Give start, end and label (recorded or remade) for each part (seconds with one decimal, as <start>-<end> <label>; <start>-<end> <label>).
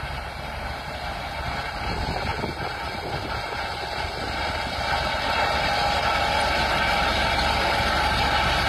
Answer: 0.0-8.7 recorded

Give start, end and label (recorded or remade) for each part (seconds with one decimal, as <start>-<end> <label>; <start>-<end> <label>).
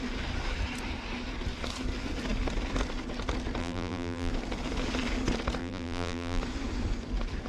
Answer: 0.0-3.6 recorded; 3.6-4.3 remade; 4.3-5.6 recorded; 5.6-6.4 remade; 6.4-7.5 recorded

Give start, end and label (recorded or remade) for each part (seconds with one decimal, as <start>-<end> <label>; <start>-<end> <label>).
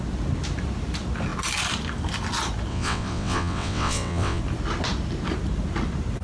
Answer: 0.0-2.7 recorded; 2.7-4.4 remade; 4.4-6.2 recorded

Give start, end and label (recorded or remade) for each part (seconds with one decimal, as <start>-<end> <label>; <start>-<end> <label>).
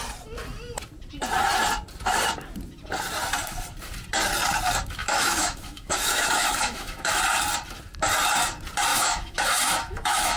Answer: 0.0-5.0 recorded; 5.0-7.2 remade; 7.2-8.9 recorded; 8.9-10.4 remade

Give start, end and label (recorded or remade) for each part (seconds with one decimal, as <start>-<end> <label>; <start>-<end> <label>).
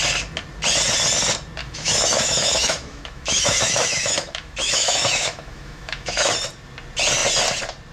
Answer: 0.0-1.6 recorded; 1.6-6.3 remade; 6.3-7.9 recorded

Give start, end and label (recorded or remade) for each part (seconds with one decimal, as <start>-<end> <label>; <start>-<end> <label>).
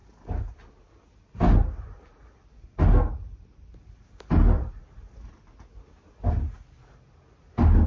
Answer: 0.0-7.9 recorded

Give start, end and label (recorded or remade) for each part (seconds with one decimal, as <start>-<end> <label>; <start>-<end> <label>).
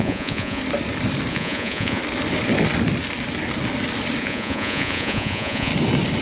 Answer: 0.0-0.6 remade; 0.6-1.3 recorded; 1.3-2.0 remade; 2.0-4.2 recorded; 4.2-5.7 remade; 5.7-6.2 recorded